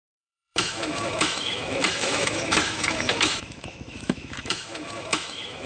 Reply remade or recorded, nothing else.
remade